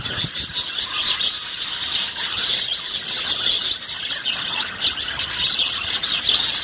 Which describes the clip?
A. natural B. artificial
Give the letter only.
A